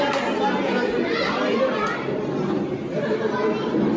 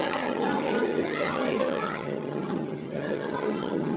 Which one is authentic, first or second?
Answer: first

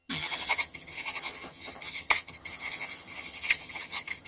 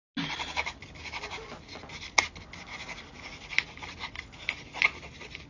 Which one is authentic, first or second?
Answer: second